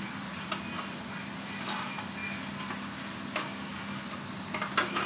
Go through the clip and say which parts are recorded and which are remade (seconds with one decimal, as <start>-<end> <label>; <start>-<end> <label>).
0.0-5.1 recorded